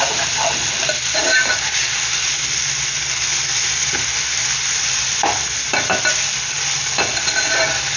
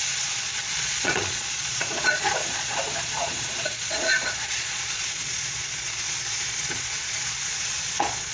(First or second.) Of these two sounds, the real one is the first